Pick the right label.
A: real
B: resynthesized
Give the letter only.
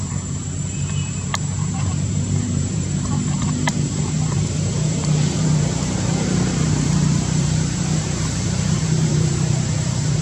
B